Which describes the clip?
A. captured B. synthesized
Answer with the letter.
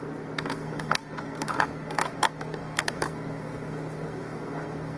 B